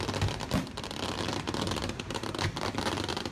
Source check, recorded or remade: recorded